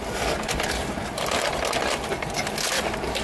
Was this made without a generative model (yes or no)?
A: yes